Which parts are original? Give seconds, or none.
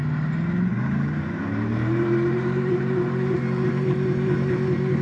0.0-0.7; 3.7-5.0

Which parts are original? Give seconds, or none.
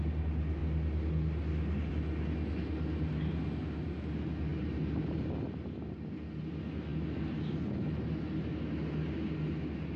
0.0-4.5; 5.3-10.0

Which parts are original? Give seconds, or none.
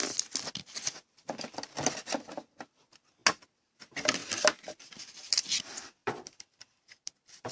0.0-6.0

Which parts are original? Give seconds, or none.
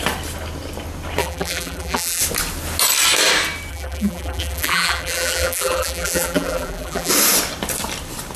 0.0-1.2; 2.2-3.7; 7.1-8.4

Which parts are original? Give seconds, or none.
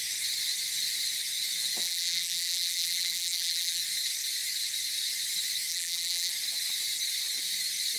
0.0-1.8; 3.8-5.7; 6.3-8.0